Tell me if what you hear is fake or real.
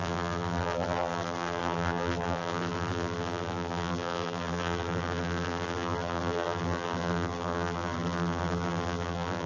fake